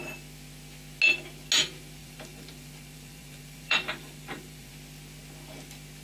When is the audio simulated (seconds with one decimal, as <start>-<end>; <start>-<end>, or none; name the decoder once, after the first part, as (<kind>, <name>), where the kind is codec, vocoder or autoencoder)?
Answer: 2.0-4.7 (vocoder, BigVGAN v2)